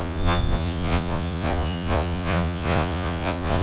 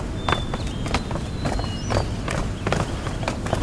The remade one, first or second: first